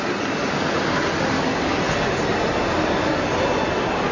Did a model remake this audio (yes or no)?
no